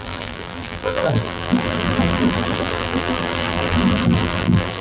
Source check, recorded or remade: remade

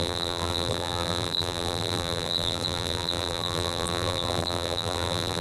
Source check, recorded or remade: remade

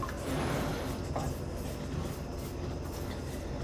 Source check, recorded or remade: recorded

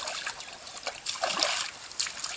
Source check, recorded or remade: recorded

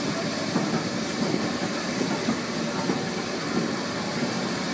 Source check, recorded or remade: remade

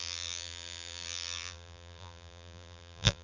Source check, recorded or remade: remade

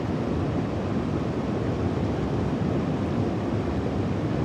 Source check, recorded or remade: recorded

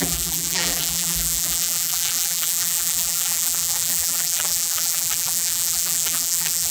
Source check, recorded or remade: remade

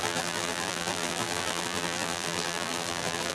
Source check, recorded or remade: remade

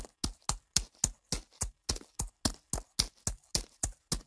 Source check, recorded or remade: recorded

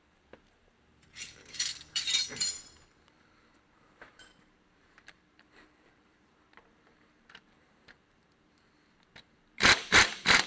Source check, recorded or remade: remade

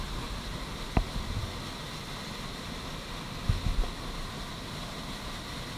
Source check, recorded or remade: recorded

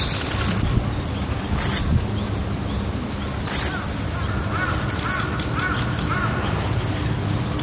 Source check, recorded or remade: recorded